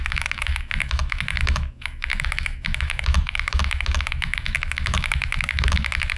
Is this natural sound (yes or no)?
no